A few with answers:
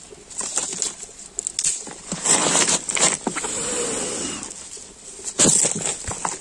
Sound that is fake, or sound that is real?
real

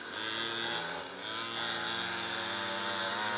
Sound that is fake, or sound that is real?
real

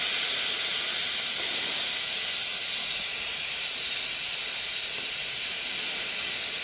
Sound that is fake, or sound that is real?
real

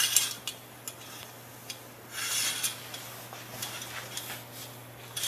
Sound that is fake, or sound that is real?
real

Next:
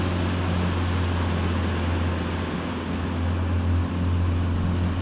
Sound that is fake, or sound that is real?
real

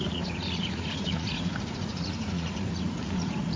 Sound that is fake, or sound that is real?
fake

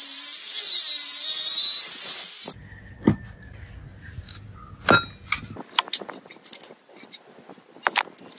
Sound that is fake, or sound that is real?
real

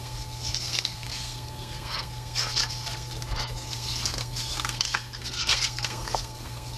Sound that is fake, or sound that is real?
fake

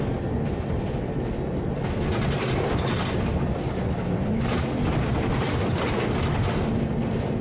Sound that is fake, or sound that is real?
real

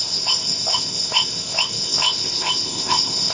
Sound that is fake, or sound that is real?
fake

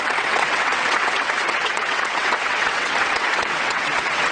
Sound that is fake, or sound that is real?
fake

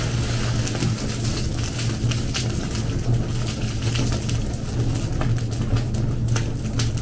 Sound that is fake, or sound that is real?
real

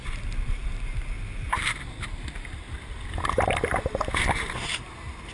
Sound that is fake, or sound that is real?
real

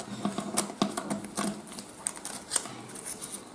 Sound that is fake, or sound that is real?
real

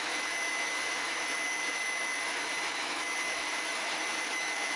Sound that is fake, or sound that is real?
fake